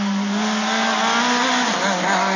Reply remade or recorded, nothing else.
recorded